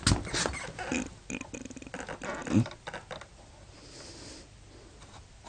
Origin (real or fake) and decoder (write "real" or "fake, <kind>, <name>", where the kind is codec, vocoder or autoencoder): real